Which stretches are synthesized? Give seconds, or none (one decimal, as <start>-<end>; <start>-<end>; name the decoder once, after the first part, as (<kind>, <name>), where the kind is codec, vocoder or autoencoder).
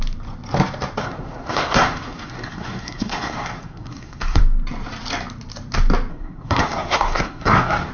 1.0-4.4 (codec, SNAC); 6.1-7.9